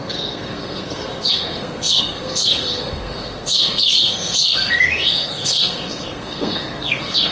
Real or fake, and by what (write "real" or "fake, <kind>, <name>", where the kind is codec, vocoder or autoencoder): fake, codec, SNAC